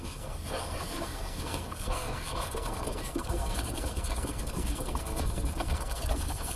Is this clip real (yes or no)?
no